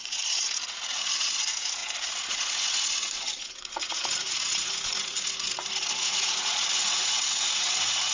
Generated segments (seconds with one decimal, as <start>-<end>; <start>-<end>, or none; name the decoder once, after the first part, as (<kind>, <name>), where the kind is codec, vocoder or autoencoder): 0.0-8.1 (vocoder, Vocos)